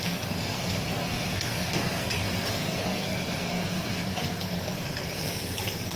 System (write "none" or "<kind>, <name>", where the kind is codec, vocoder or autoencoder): codec, SNAC